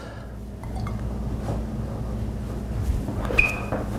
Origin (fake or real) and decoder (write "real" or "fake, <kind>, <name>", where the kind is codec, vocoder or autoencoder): real